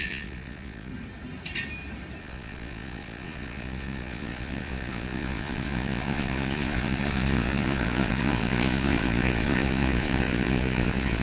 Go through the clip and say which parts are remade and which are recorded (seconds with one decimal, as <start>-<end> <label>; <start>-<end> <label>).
0.0-0.9 remade; 0.9-2.2 recorded; 2.2-11.2 remade